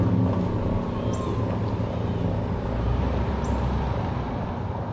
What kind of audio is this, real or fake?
real